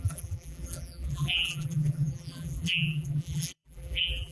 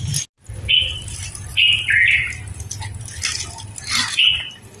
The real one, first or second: second